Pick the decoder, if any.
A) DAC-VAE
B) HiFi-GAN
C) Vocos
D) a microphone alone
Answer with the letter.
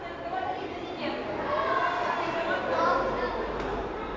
D